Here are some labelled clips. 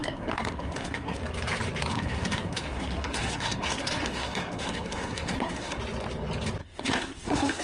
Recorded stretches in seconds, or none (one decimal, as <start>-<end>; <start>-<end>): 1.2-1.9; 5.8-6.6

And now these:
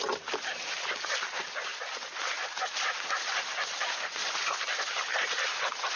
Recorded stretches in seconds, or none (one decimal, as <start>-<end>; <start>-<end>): 0.0-6.0

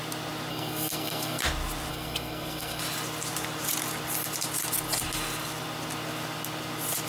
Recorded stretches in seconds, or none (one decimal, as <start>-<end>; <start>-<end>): 0.0-0.5; 1.4-1.9; 2.8-7.1

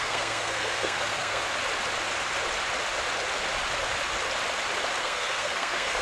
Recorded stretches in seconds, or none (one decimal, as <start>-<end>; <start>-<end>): 1.4-5.0

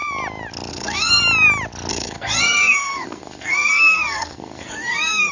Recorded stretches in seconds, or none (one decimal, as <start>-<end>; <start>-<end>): 0.0-0.7; 1.2-1.9

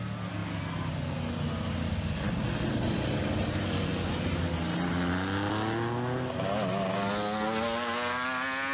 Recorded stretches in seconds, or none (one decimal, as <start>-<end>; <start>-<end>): 0.0-8.7

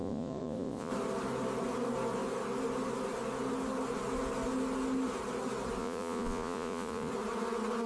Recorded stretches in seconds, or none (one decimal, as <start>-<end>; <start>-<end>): 0.9-5.8; 7.1-7.9

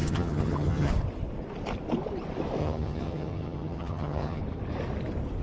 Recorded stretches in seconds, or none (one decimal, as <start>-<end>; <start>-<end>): 0.9-2.6; 4.4-5.4